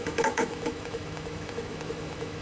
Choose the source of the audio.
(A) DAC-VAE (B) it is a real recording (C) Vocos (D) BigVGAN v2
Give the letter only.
A